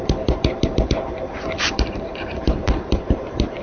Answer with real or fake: fake